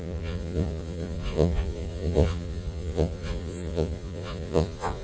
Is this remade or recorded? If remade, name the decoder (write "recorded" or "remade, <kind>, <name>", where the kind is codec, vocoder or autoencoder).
remade, vocoder, Vocos